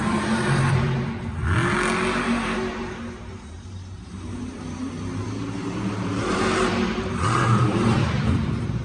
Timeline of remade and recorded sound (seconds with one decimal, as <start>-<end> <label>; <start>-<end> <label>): 0.0-1.4 remade; 1.4-2.2 recorded; 2.2-8.8 remade